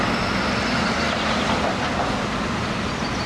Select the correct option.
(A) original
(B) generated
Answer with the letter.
A